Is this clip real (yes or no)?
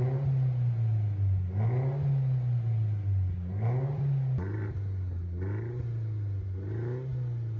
yes